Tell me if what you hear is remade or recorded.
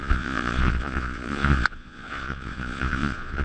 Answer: remade